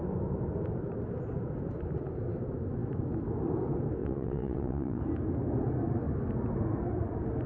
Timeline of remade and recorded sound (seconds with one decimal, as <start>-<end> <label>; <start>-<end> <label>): 0.0-4.0 recorded; 4.0-5.0 remade; 5.0-7.5 recorded

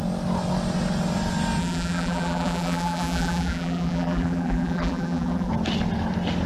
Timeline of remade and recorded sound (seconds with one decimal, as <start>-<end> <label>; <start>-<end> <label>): 0.0-1.6 recorded; 1.6-5.5 remade; 5.5-6.5 recorded